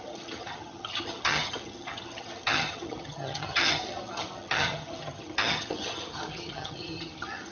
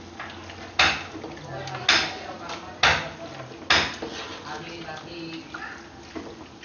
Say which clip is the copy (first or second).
first